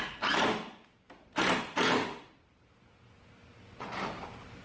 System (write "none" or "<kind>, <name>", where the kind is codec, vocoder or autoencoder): none